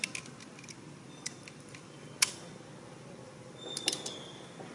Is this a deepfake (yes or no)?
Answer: no